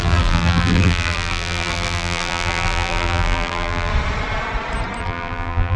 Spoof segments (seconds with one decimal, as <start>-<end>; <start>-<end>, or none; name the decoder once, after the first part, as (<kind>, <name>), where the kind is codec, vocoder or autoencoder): 0.0-3.9 (vocoder, BigVGAN v2); 5.0-5.8